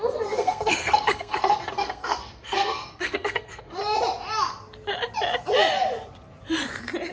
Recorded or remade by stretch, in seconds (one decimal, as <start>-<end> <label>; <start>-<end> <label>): 0.0-3.8 remade; 3.8-7.1 recorded